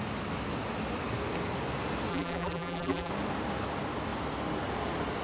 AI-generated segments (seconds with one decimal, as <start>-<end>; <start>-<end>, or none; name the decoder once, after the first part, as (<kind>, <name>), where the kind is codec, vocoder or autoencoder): 2.1-3.1 (vocoder, BigVGAN v2)